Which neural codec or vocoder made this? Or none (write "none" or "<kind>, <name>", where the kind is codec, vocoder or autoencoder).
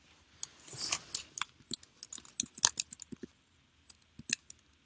none